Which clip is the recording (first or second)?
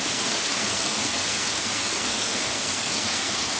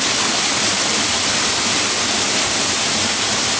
second